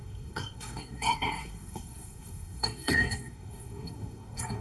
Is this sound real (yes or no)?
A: no